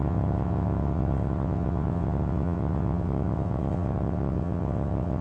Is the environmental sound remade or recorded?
remade